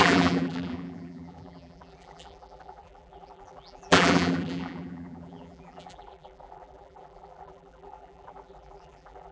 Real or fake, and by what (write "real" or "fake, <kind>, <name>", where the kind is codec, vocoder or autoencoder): fake, vocoder, BigVGAN v2